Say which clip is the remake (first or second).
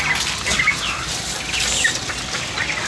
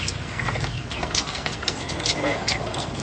second